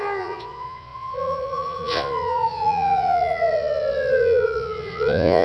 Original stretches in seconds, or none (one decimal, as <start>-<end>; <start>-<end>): none